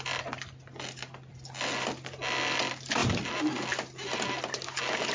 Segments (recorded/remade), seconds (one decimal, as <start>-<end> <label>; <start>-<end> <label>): 0.0-5.1 recorded